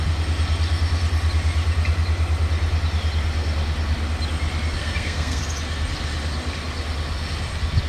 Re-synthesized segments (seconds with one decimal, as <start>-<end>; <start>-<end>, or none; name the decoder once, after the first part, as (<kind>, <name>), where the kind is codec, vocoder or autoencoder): 4.8-5.4 (codec, SNAC)